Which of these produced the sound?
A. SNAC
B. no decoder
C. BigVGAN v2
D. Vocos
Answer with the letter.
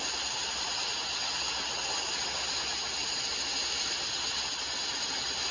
B